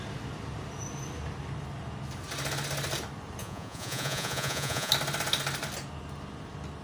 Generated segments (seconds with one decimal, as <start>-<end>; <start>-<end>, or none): 3.4-4.9